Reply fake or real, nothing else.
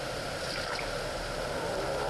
real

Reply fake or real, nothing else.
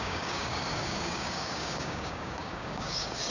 fake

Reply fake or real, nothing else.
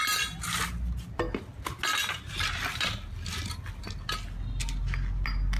real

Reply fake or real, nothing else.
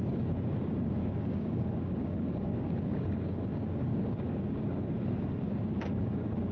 fake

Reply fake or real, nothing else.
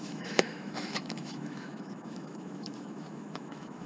fake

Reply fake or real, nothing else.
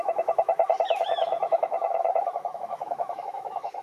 fake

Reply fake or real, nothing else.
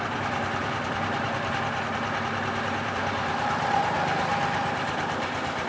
fake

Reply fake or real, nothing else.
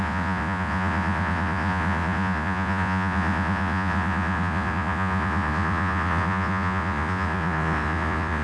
fake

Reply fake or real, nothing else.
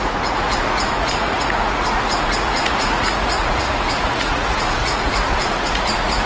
fake